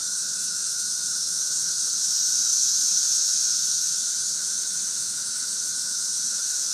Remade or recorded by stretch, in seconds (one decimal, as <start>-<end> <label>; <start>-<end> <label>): 0.0-6.7 remade